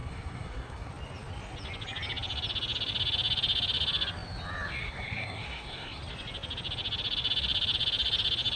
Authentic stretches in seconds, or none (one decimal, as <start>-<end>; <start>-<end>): 0.9-4.8; 6.0-8.6